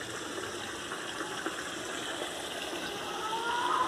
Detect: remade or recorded recorded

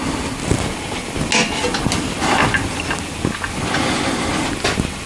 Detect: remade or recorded recorded